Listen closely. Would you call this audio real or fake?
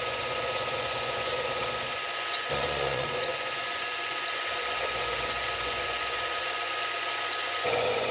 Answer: fake